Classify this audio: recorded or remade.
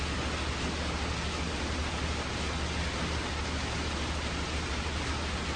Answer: recorded